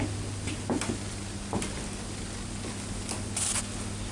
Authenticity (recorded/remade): recorded